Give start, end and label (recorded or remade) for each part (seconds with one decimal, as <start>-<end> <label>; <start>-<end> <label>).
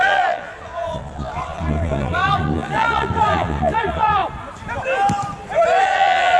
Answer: 0.0-4.2 remade; 4.2-5.8 recorded; 5.8-6.4 remade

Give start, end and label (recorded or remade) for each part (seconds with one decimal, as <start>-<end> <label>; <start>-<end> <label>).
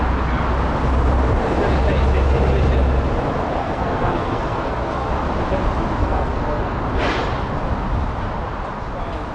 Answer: 0.0-3.6 recorded; 3.6-5.1 remade; 5.1-6.0 recorded; 6.0-6.8 remade; 6.8-9.3 recorded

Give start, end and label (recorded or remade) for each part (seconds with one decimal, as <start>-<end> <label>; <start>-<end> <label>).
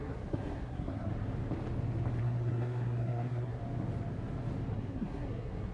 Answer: 0.0-1.1 remade; 1.1-2.2 recorded; 2.2-3.6 remade; 3.6-4.7 recorded; 4.7-5.7 remade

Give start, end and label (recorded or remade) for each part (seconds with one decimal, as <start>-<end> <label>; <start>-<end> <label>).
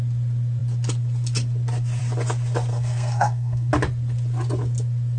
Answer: 0.0-2.7 recorded; 2.7-3.7 remade; 3.7-5.2 recorded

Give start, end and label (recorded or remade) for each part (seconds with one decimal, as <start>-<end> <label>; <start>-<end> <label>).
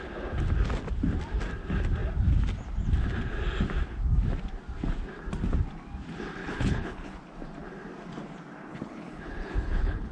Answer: 0.0-6.4 recorded; 6.4-7.2 remade; 7.2-8.7 recorded; 8.7-10.1 remade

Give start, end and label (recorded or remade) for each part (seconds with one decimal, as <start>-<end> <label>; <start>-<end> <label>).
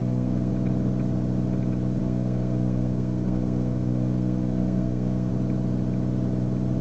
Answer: 0.0-0.5 remade; 0.5-2.0 recorded; 2.0-5.3 remade; 5.3-6.8 recorded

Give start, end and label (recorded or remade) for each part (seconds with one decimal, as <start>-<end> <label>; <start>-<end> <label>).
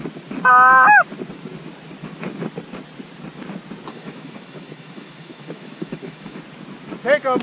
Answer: 0.0-3.9 recorded; 3.9-6.4 remade; 6.4-7.4 recorded